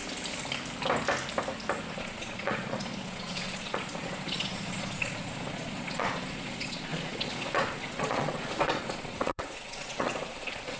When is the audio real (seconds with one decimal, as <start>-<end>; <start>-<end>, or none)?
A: 0.0-1.9